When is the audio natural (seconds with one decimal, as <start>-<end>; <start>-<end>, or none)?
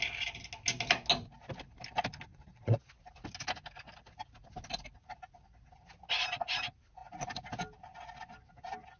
0.0-2.3; 2.9-9.0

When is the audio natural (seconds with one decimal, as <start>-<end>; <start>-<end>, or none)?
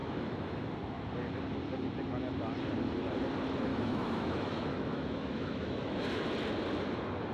0.7-3.7; 6.3-7.3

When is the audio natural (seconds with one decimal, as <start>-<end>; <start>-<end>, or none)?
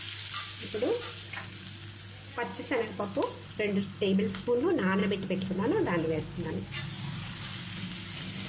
0.0-8.5